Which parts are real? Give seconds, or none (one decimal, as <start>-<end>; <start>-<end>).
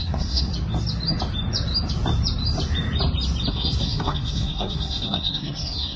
0.5-3.5